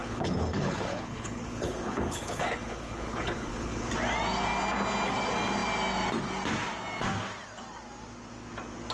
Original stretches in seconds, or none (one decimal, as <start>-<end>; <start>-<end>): 3.9-8.9